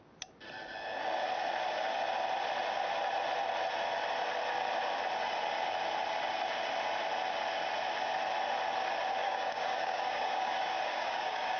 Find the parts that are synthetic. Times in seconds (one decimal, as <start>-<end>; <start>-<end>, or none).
9.2-11.6